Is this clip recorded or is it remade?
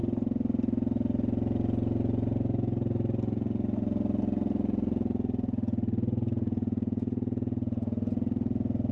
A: recorded